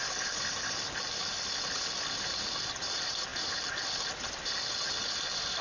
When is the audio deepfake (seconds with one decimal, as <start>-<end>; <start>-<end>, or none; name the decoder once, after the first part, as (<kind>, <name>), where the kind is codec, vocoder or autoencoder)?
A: none